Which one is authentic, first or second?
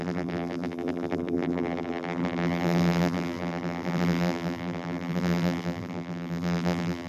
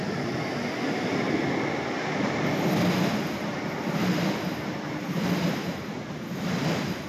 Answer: second